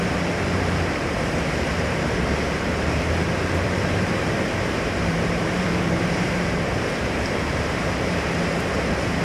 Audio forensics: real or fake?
fake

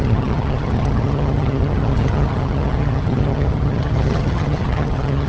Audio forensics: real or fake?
fake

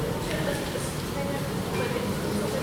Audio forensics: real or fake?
real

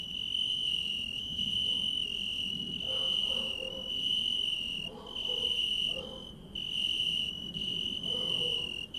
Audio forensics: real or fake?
real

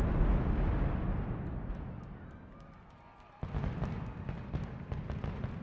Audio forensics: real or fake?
real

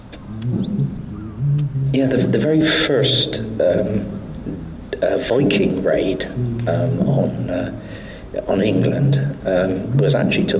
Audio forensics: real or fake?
real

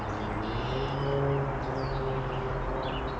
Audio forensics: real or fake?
real